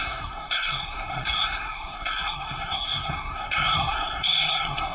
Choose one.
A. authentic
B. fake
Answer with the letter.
B